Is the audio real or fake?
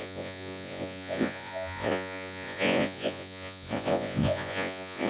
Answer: fake